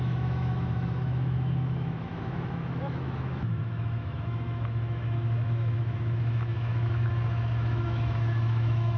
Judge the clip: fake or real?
fake